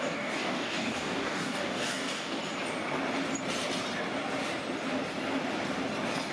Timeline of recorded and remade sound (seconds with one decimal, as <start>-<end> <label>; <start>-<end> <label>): 0.0-2.4 remade; 2.4-6.3 recorded